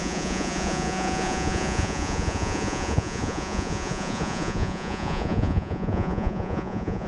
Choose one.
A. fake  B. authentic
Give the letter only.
A